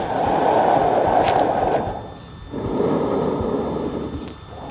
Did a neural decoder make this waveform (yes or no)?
no